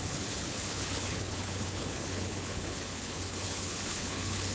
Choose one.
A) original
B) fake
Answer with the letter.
B